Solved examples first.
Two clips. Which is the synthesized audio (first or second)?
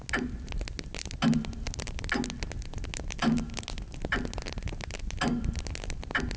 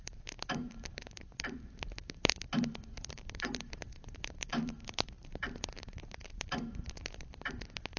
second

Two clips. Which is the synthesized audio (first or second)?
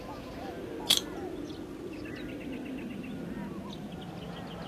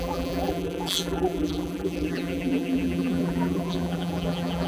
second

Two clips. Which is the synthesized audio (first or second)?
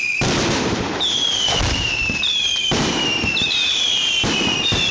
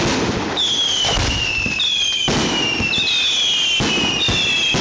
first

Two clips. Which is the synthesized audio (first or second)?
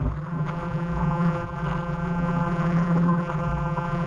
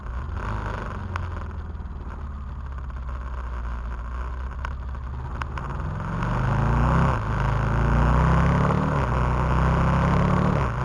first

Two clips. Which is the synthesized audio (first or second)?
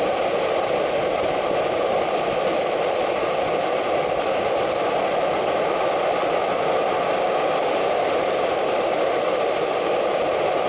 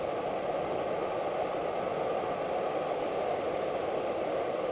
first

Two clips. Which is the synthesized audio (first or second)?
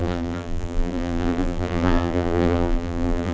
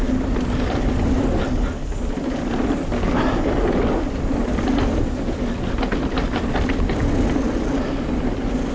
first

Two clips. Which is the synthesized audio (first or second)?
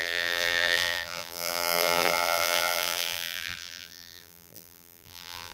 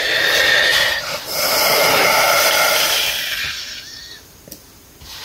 first